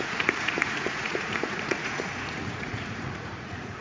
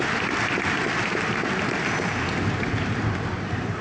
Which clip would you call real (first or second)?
second